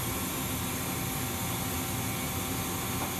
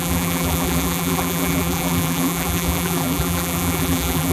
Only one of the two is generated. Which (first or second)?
second